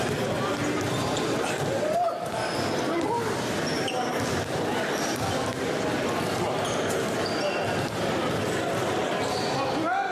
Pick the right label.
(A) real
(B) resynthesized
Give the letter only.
A